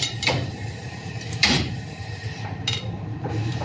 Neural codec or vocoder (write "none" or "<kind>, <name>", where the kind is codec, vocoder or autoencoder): vocoder, BigVGAN v2